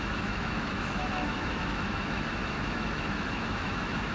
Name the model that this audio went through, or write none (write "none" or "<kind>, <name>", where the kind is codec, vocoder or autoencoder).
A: autoencoder, DAC-VAE